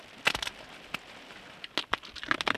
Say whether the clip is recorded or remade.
recorded